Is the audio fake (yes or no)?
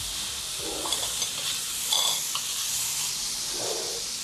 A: no